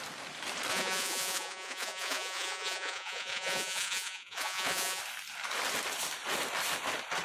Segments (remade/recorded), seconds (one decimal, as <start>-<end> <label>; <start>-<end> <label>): 0.0-0.7 recorded; 0.7-5.0 remade; 5.0-7.2 recorded